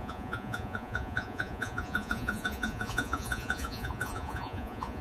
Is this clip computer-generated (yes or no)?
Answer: yes